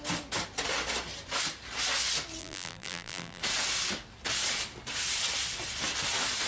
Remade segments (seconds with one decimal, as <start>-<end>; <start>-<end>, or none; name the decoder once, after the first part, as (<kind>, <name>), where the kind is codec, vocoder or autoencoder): 2.4-3.4 (vocoder, BigVGAN v2)